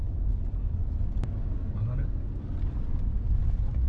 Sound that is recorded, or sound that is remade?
recorded